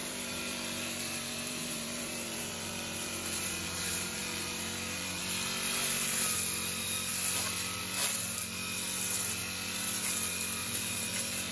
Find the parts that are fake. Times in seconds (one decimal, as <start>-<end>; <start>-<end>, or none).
0.0-5.2; 10.6-11.5